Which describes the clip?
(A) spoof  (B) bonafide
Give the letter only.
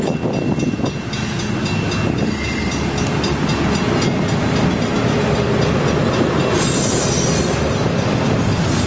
B